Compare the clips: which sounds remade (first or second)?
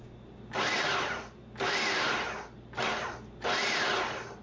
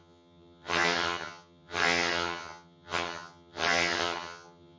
second